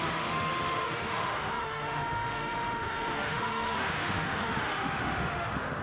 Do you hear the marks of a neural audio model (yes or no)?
yes